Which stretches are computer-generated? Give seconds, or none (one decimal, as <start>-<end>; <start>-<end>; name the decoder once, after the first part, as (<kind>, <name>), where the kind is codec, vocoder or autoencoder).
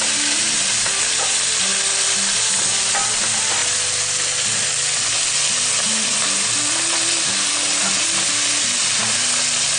none